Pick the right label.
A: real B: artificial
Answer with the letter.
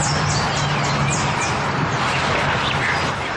A